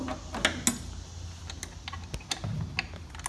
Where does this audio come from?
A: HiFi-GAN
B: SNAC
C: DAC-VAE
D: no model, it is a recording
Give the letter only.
D